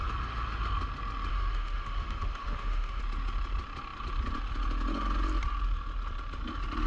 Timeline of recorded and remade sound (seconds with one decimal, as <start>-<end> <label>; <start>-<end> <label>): 0.0-1.3 recorded; 1.3-3.0 remade; 3.0-6.9 recorded